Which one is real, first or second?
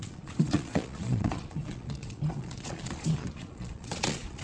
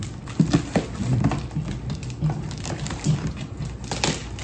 second